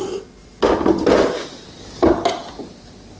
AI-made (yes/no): no